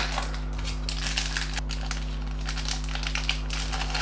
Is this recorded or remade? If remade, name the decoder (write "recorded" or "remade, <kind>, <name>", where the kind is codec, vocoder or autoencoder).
recorded